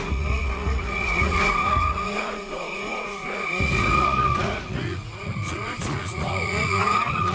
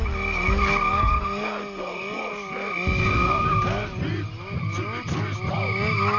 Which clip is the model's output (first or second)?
first